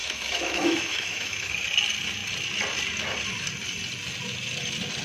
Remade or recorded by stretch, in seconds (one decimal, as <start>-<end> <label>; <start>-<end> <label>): 0.0-1.5 remade; 1.5-5.0 recorded